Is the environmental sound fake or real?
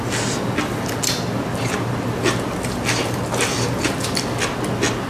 real